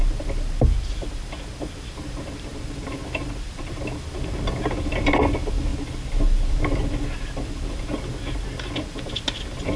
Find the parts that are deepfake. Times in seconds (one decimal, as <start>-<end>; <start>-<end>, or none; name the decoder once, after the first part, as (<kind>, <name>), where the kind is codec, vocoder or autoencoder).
2.5-3.7 (vocoder, BigVGAN v2); 5.7-6.6